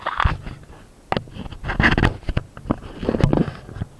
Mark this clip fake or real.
real